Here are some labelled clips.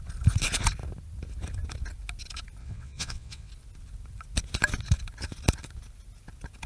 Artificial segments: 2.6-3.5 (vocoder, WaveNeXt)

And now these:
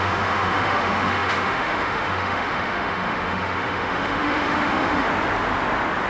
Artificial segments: 0.0-5.1 (autoencoder, DAC-VAE)

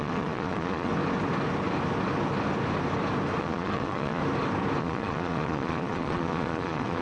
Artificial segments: 0.0-0.9 (vocoder, Vocos); 3.4-4.2; 4.8-7.0

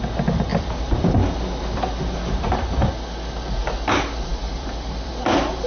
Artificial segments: 0.5-2.9 (vocoder, BigVGAN v2); 4.3-5.1

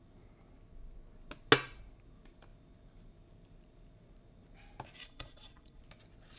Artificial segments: 5.0-5.8 (vocoder, Vocos)